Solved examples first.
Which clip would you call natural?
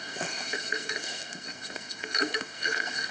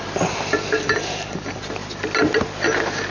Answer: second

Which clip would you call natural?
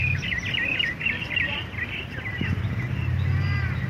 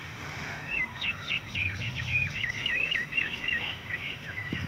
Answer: first